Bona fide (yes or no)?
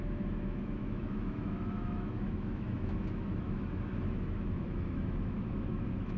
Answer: no